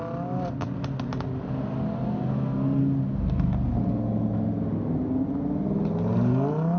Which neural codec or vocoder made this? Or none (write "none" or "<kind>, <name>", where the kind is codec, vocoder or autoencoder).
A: none